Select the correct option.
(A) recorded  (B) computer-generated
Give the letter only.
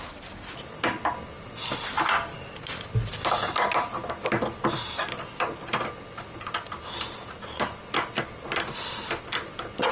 A